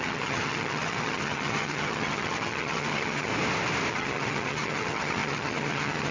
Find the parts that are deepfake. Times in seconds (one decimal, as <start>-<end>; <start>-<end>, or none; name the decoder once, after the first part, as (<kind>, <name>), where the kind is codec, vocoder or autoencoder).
0.0-3.3 (vocoder, HiFi-GAN); 3.9-6.1